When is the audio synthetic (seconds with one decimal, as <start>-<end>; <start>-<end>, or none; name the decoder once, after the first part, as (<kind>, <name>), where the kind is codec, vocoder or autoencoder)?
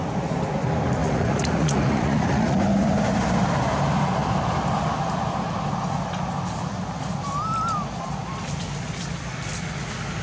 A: 1.0-2.6 (vocoder, Vocos)